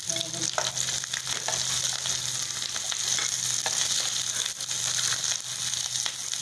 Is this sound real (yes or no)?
yes